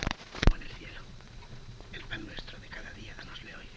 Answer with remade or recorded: remade